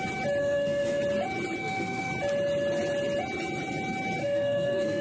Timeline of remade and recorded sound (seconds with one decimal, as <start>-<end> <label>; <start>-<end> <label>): 0.0-0.4 recorded; 0.4-1.0 remade; 1.0-1.6 recorded; 1.6-2.1 remade; 2.1-4.2 recorded; 4.2-5.0 remade